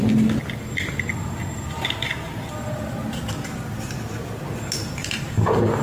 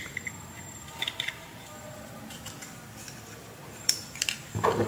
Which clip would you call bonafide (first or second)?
first